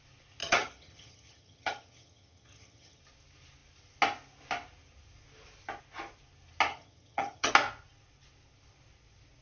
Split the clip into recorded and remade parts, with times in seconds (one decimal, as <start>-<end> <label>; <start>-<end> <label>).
0.0-0.4 recorded; 0.4-3.0 remade; 3.0-6.7 recorded; 6.7-7.5 remade; 7.5-9.4 recorded